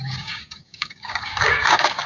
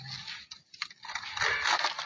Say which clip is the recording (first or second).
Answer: second